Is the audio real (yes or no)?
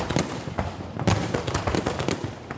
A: yes